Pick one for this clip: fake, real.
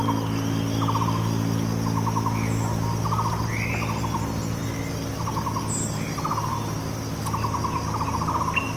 real